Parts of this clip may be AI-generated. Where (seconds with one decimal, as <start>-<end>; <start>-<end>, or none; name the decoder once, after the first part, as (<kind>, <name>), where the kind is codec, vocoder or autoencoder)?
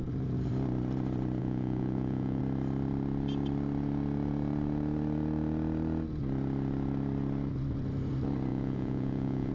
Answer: 1.4-2.4 (vocoder, Vocos); 8.5-9.5